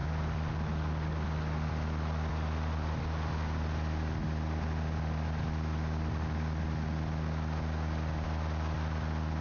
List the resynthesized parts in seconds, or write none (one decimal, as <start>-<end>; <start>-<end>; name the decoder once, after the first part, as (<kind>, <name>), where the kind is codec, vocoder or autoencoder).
none